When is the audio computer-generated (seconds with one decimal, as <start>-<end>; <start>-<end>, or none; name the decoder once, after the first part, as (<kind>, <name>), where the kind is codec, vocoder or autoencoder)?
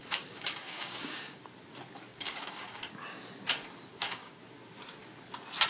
0.0-1.4 (codec, DAC); 2.1-2.8; 3.9-4.4